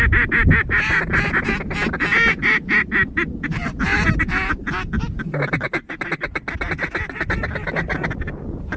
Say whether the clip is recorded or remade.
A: recorded